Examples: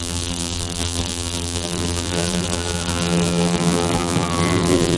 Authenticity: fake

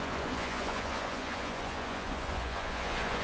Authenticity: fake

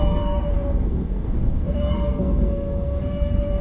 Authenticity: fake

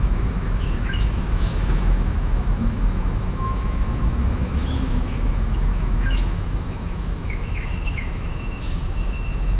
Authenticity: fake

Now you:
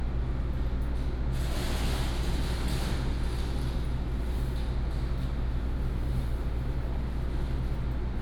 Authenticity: real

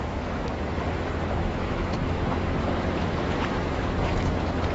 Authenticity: fake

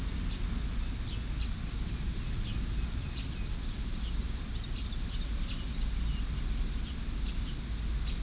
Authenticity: real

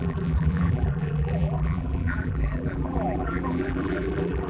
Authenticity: fake